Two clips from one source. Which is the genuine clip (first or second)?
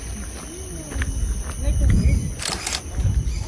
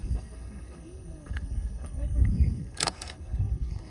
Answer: first